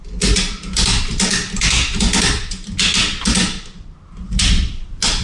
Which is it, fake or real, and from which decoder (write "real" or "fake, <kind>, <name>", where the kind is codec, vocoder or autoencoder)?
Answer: real